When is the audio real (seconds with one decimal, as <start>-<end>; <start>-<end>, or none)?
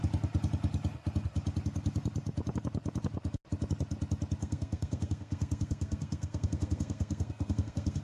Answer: 0.0-4.4